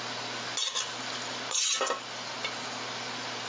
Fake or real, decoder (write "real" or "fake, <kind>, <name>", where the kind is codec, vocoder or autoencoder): real